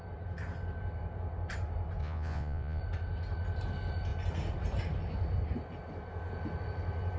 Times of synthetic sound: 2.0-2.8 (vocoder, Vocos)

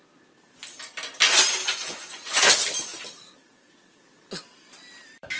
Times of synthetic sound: 1.7-2.4 (vocoder, Vocos)